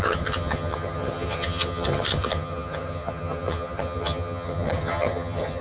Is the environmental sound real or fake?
fake